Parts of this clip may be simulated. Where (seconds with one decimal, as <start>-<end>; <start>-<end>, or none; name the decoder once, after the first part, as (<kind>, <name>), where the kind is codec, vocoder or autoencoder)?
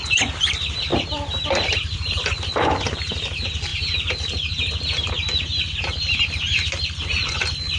0.0-0.9 (vocoder, BigVGAN v2); 2.8-3.7; 5.1-7.8